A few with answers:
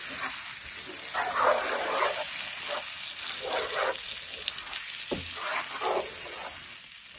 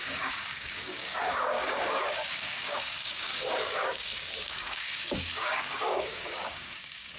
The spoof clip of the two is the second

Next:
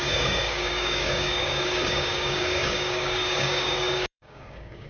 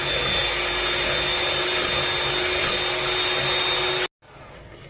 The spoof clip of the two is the first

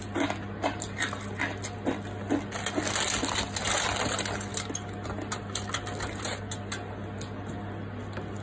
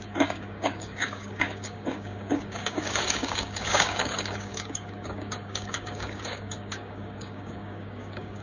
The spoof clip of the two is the second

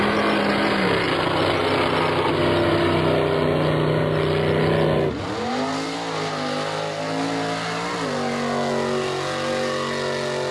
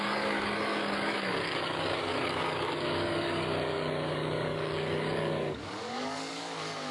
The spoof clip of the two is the second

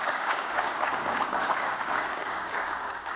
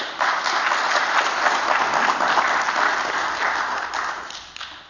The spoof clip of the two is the first